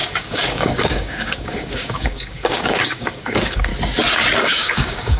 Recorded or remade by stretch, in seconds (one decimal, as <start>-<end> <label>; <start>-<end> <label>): 0.0-3.7 remade; 3.7-4.4 recorded; 4.4-5.2 remade